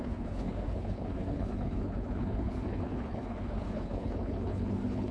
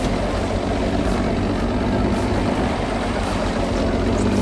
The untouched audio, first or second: second